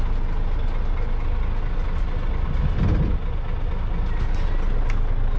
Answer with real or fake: real